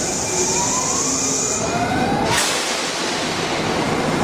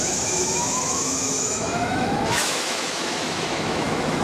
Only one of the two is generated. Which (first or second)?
second